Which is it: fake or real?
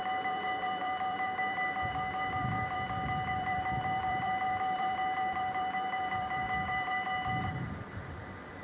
fake